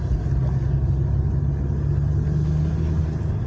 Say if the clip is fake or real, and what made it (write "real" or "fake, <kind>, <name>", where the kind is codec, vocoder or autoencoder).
real